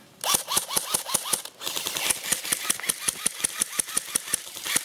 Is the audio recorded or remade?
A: recorded